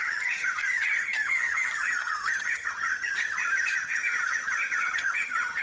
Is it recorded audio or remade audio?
remade